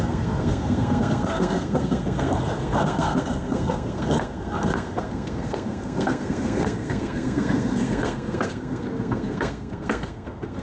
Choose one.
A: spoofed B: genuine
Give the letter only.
A